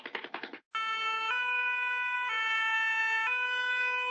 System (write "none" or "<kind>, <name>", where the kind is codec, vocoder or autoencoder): none